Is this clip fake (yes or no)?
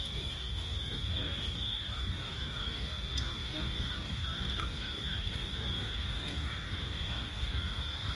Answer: yes